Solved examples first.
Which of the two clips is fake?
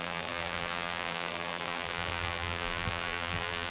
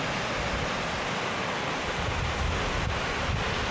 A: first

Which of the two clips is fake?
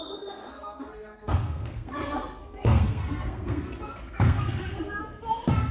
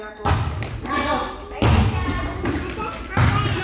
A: first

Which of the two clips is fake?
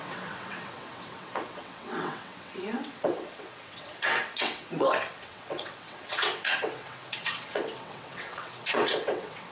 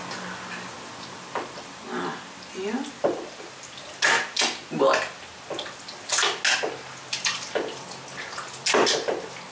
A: first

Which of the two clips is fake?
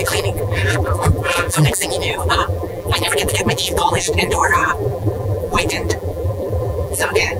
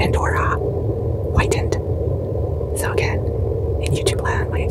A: first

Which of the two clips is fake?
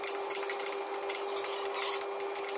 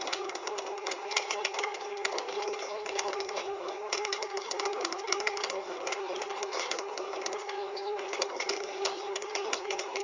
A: second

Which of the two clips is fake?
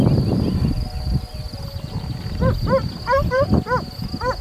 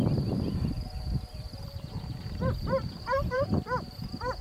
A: second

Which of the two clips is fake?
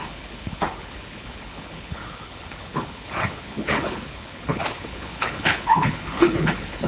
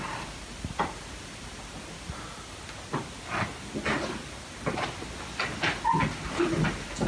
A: first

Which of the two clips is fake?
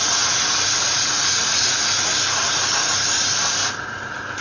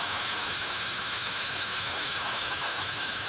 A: second